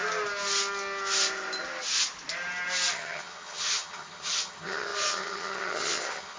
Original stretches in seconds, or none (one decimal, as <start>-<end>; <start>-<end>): 0.0-2.9